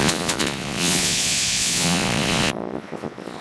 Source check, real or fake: fake